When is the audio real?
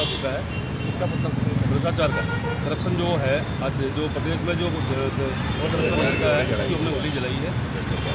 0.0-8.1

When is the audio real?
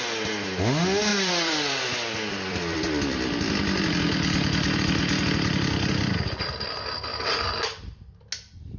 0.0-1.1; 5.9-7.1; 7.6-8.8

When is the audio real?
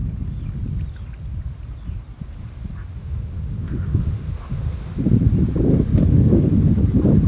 0.0-3.0; 4.9-5.7; 6.5-7.3